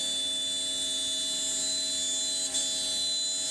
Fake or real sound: real